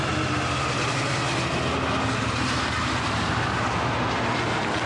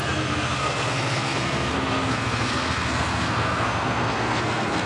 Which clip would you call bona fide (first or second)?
first